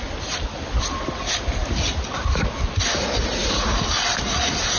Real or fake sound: real